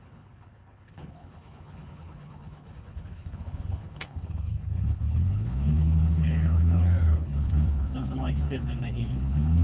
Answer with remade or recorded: remade